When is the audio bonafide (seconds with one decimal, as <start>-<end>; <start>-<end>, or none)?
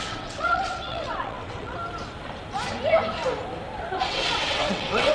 1.8-4.0